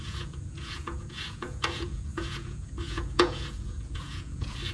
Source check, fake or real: fake